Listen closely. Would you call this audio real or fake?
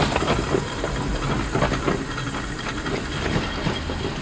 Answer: real